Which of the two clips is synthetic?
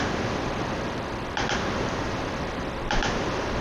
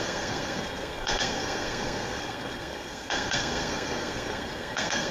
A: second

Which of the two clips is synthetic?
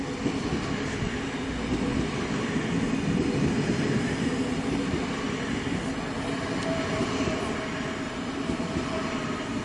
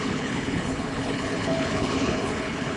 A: second